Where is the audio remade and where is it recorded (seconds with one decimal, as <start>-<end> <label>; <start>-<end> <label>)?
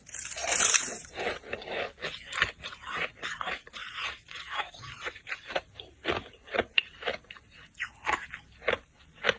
0.0-0.4 recorded; 0.4-1.8 remade; 1.8-3.8 recorded; 3.8-7.7 remade; 7.7-9.4 recorded